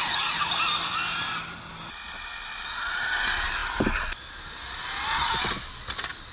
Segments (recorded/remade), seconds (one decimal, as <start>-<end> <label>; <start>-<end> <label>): 0.0-6.3 recorded